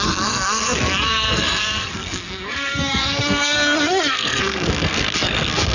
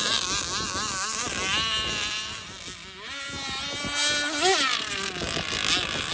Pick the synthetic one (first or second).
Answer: first